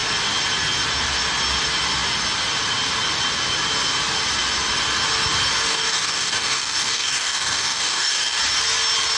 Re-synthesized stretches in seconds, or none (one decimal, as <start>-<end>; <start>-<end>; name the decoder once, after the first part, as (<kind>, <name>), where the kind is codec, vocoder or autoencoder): 5.7-8.4 (codec, DAC)